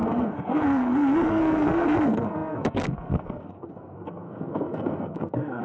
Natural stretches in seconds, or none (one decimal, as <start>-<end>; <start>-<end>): none

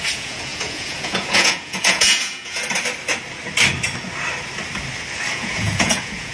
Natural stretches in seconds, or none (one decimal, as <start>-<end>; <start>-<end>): 2.6-5.3